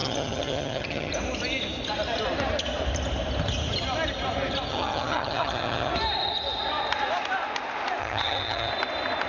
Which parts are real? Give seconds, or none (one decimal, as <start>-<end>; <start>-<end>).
1.1-4.7; 5.9-8.0; 8.7-9.3